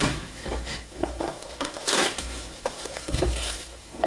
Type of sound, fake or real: fake